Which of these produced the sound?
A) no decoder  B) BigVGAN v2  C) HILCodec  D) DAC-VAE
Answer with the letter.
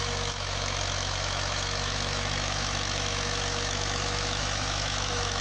D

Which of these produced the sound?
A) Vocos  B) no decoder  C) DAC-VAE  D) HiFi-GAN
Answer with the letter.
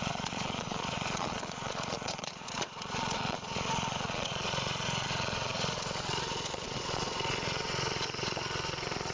A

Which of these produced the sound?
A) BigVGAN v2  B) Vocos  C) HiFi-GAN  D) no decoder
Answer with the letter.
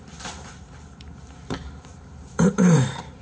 A